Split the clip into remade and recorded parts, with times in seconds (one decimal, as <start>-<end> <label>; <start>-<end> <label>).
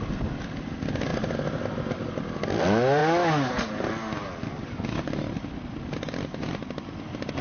0.0-7.4 recorded